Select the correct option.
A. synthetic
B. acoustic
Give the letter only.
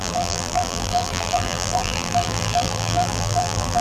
A